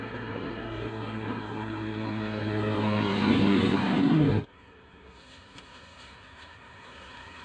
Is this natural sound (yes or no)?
no